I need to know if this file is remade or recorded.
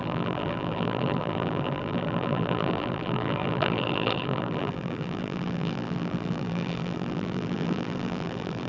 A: remade